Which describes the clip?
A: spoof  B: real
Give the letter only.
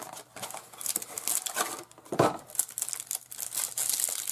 B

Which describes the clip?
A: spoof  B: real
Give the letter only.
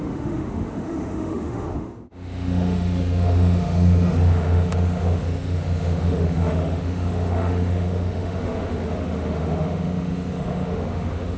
A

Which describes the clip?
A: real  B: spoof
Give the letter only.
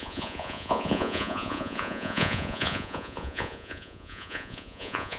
B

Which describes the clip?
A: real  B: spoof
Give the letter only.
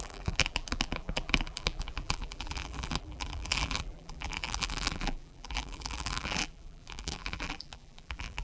B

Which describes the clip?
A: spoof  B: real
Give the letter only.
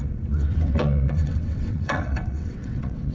A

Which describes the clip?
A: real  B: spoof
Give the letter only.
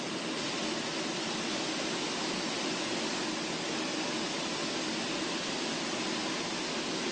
A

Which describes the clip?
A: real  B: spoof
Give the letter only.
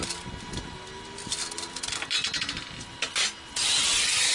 A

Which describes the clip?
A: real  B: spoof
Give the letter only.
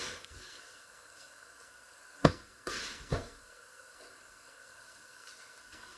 B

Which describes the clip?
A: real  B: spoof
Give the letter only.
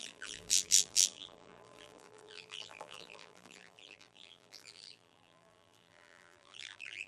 B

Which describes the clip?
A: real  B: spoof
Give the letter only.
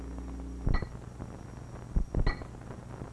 A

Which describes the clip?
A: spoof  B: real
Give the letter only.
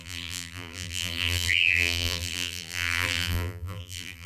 A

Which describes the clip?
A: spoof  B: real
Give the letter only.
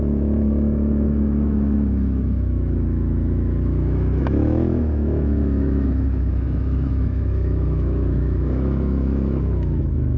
A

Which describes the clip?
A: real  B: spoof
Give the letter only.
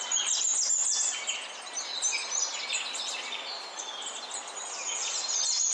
A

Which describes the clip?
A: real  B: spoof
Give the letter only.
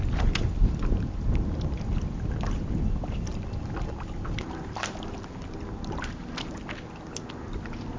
A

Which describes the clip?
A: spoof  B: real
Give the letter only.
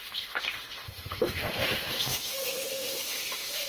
A